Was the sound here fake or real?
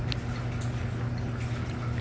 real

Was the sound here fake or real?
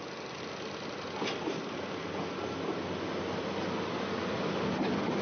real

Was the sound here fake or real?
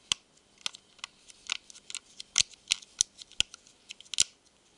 real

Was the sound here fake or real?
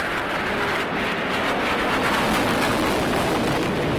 real